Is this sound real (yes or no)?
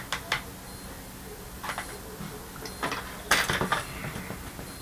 yes